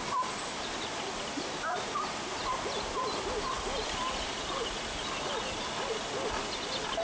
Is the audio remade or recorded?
recorded